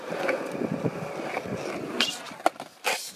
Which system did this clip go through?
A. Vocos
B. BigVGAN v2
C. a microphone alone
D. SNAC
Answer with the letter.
C